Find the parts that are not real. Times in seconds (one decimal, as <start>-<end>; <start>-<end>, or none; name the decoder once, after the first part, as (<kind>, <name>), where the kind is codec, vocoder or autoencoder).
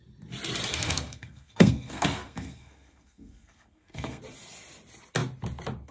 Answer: 0.7-4.2 (codec, SNAC)